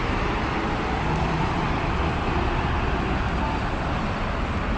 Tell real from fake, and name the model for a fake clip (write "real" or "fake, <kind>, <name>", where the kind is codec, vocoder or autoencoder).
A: real